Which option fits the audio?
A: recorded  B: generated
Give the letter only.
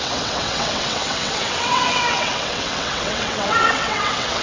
B